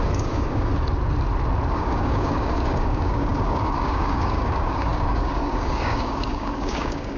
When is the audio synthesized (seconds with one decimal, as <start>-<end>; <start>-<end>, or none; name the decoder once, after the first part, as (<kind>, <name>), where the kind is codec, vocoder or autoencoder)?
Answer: 0.0-0.7 (codec, DAC); 1.7-7.2